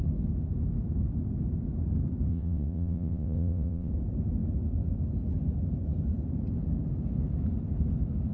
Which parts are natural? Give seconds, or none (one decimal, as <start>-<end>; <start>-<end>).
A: 0.0-2.3; 3.9-8.3